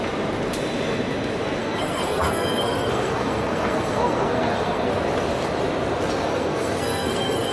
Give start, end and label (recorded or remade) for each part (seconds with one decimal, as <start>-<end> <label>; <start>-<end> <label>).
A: 0.0-1.6 recorded; 1.6-4.9 remade; 4.9-6.2 recorded; 6.2-7.5 remade